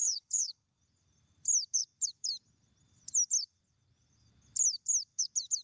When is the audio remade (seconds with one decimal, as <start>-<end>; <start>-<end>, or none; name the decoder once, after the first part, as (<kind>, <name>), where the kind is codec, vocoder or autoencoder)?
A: 0.0-0.8 (codec, HILCodec)